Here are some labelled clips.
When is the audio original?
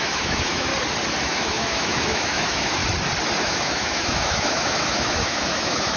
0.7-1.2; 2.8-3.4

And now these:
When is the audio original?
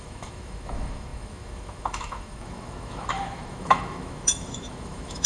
none